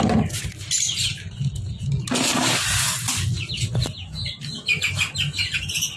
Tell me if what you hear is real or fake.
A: real